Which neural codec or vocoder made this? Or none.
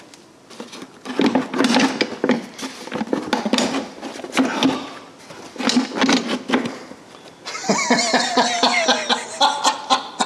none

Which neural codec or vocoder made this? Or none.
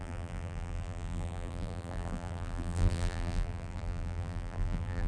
vocoder, BigVGAN v2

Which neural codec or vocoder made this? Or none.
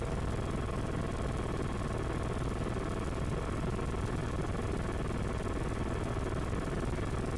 none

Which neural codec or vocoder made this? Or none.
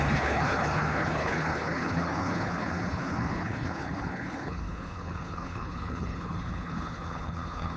codec, HILCodec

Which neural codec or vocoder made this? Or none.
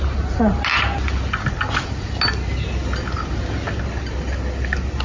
none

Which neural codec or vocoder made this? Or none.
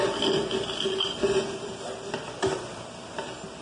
none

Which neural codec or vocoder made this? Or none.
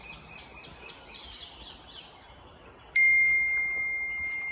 none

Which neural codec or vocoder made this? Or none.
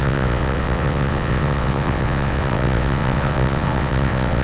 vocoder, WaveNeXt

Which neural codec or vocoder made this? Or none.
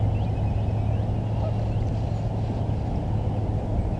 none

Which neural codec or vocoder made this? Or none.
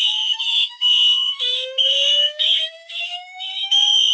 autoencoder, DAC-VAE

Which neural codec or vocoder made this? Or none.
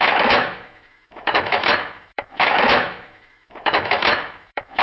autoencoder, DAC-VAE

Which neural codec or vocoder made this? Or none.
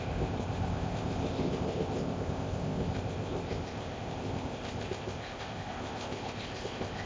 codec, ZipCodec